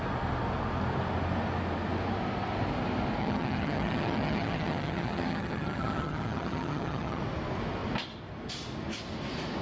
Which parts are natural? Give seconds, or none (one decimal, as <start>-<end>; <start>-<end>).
0.0-3.2; 7.2-9.6